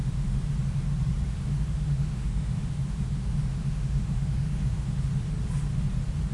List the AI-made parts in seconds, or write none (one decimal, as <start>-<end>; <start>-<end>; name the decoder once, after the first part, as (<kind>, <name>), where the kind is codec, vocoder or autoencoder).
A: 0.0-0.5 (autoencoder, DAC-VAE); 1.3-5.1